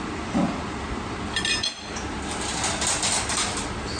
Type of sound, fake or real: real